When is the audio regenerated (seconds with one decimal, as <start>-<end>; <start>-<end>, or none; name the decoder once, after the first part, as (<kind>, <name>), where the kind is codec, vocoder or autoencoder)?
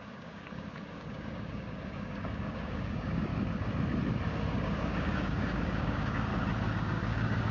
0.0-3.3 (codec, DAC); 4.3-6.3; 6.8-7.5